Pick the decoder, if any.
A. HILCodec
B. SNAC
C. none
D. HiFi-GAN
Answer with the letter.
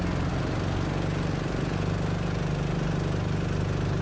C